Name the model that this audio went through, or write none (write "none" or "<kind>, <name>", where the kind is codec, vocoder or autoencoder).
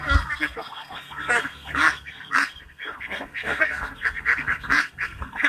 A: codec, SNAC